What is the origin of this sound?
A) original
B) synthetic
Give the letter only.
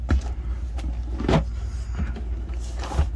A